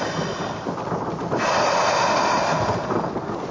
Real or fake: real